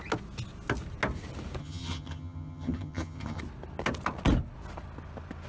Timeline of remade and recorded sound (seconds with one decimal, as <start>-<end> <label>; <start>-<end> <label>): 0.0-1.6 recorded; 1.6-3.4 remade; 3.4-5.5 recorded